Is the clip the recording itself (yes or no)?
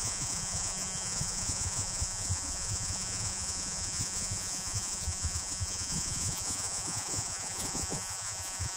no